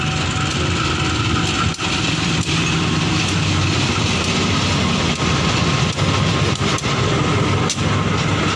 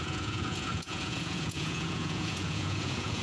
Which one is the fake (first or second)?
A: second